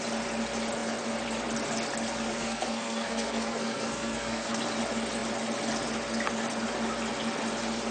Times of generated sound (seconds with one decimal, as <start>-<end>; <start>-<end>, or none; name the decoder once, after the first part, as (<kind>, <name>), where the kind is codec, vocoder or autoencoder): 2.3-4.6 (codec, SNAC)